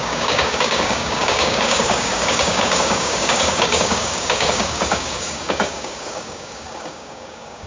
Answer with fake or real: fake